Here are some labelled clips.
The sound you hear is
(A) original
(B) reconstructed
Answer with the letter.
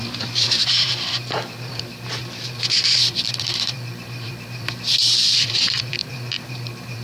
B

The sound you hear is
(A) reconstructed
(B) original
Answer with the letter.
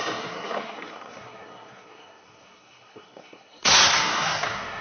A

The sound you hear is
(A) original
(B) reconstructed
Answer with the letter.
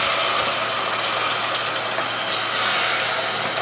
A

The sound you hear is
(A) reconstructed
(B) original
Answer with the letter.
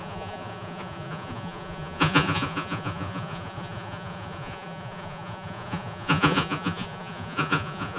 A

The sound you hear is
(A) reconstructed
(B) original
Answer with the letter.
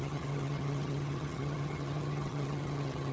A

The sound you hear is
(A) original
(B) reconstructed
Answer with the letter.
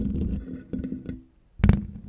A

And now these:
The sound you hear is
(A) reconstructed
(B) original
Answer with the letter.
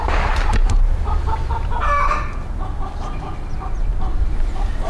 B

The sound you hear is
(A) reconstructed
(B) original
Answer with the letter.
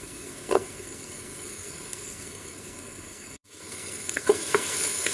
A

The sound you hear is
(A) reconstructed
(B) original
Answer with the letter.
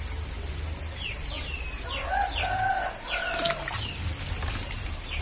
B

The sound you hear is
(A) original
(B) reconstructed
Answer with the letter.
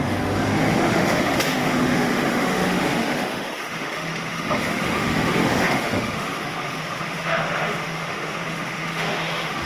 B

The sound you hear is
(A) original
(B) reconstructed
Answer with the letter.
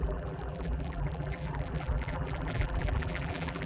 B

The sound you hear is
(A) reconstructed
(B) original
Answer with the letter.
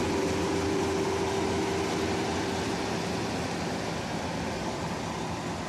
B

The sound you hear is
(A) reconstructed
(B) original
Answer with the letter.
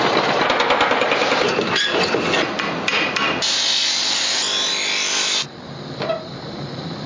B